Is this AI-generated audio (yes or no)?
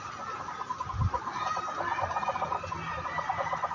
no